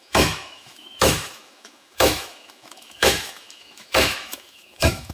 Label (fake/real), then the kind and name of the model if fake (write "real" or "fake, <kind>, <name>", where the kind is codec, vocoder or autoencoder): fake, autoencoder, DAC-VAE